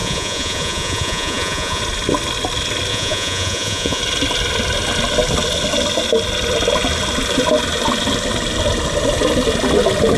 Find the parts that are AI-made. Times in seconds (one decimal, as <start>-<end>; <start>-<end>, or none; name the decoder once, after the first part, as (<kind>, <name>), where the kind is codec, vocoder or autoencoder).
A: 0.0-1.8 (vocoder, Vocos); 2.9-4.0